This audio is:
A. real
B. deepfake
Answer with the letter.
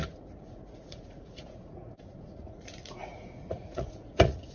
B